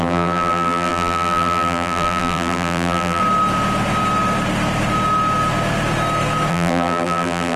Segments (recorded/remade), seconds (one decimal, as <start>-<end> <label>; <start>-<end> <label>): 0.0-3.2 remade; 3.2-6.5 recorded; 6.5-7.6 remade